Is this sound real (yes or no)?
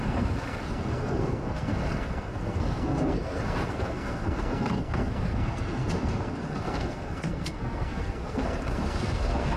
no